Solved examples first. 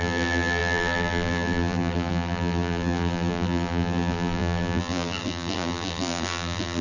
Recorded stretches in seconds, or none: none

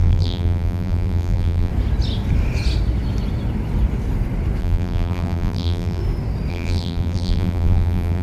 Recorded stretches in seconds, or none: 1.7-4.6; 6.0-6.5

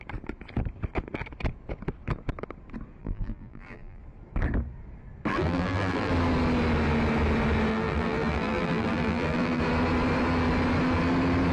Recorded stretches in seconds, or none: 0.0-3.0; 4.0-5.3; 6.1-7.7; 9.6-11.5

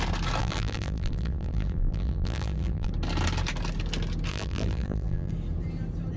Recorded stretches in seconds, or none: 0.0-0.4; 2.9-4.3; 5.3-6.2

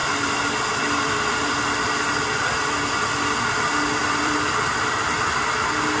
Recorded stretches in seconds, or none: 0.0-4.0; 5.2-6.0